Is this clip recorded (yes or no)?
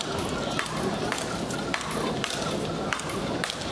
yes